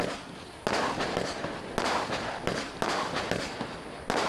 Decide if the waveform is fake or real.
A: real